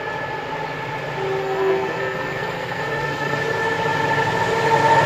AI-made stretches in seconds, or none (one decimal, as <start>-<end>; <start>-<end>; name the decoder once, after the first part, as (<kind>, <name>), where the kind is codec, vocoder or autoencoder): 1.4-3.4 (codec, SNAC)